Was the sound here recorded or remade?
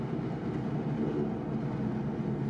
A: recorded